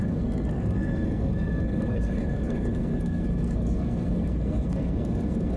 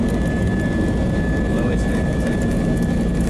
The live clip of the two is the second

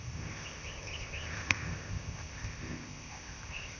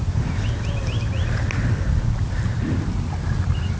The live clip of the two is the second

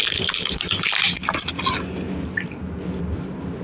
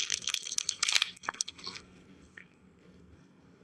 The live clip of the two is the first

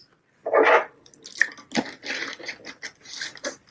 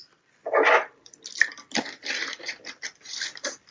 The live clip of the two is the first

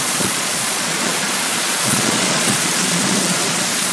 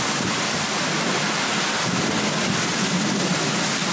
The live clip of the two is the second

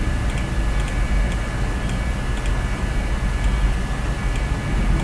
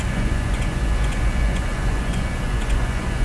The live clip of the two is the first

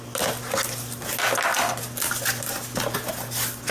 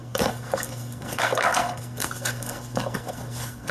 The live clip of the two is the first